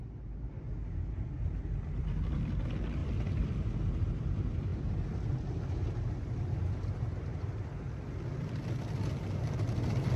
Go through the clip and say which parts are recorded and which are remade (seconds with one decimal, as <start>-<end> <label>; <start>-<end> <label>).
0.0-10.2 recorded